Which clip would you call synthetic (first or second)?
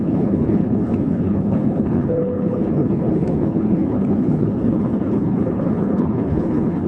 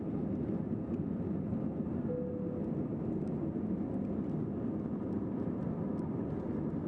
first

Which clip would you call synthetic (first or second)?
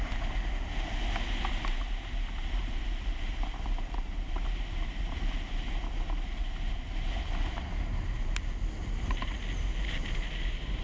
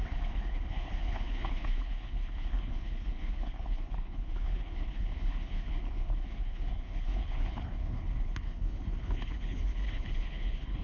second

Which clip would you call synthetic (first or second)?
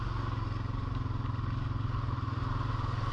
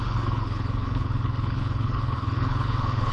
second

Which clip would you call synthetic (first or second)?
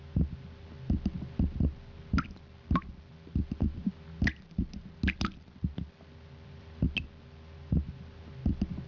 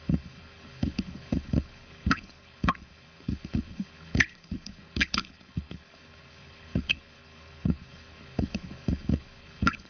second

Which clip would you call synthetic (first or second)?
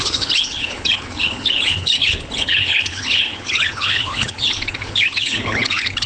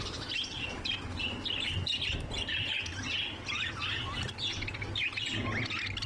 first